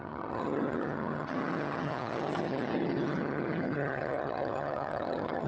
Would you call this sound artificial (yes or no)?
yes